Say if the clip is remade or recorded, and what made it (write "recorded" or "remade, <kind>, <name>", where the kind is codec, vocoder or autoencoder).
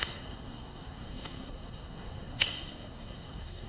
remade, codec, SNAC